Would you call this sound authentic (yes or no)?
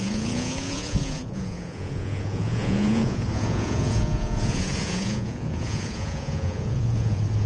no